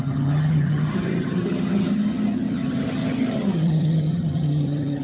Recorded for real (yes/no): no